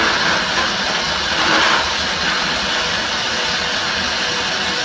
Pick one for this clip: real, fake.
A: real